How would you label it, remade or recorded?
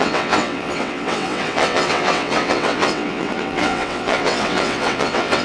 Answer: remade